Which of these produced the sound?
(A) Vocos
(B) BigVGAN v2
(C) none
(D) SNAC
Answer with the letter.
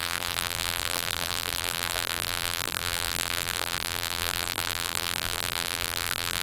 B